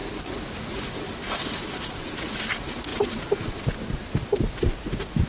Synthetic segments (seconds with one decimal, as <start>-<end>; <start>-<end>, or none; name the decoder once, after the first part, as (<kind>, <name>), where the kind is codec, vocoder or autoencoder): none